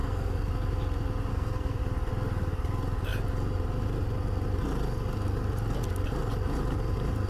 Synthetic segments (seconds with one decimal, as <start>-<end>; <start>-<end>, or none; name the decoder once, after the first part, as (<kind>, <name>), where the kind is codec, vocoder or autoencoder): 0.0-0.5 (codec, SNAC); 1.3-1.8